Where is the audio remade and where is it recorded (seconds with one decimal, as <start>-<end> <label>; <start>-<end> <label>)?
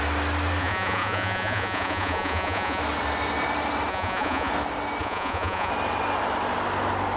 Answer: 0.0-0.6 recorded; 0.6-2.8 remade; 2.8-3.9 recorded; 3.9-4.5 remade; 4.5-5.0 recorded; 5.0-5.7 remade; 5.7-7.2 recorded